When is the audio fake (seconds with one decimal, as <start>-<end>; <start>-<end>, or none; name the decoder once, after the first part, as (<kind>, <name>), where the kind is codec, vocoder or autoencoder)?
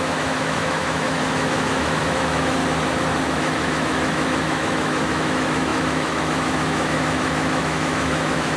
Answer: 0.0-2.6 (autoencoder, DAC-VAE); 3.3-8.6